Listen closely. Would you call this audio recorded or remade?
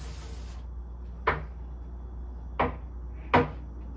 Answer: recorded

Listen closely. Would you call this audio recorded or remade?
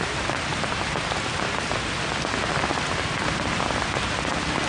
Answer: recorded